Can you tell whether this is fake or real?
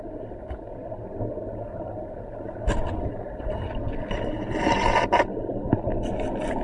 real